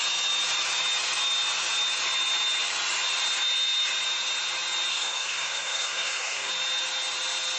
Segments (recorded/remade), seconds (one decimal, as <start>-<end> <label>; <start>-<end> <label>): 0.0-4.9 recorded; 4.9-6.5 remade; 6.5-7.6 recorded